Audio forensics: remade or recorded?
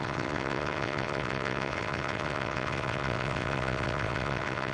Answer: remade